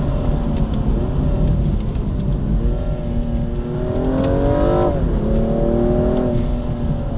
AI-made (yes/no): no